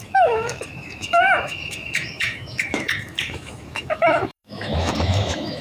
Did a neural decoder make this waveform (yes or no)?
yes